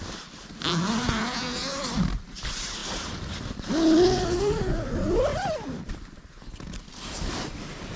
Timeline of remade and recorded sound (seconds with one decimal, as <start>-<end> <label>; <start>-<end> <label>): 0.0-8.0 recorded